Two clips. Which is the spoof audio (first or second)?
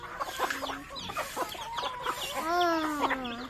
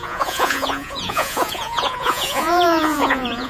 second